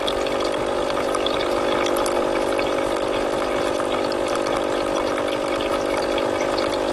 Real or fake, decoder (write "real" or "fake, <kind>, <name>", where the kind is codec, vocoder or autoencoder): fake, vocoder, BigVGAN v2